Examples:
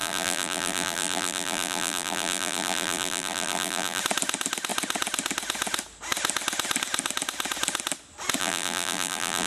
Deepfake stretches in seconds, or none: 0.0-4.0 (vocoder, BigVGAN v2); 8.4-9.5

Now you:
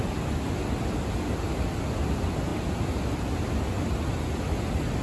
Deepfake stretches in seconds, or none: none

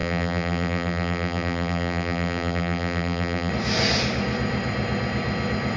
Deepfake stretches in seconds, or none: 0.0-3.5 (vocoder, BigVGAN v2)

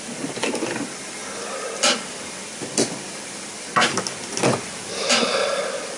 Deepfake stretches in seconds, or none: none

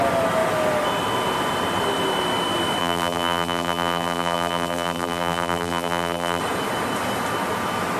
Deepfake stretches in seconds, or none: 2.8-6.4 (vocoder, BigVGAN v2)